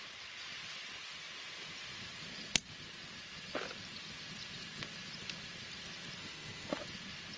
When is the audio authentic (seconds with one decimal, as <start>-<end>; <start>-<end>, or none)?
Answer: 0.0-6.2; 6.8-7.4